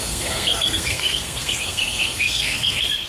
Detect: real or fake fake